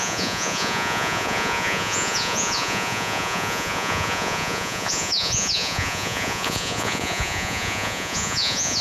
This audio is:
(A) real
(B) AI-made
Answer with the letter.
B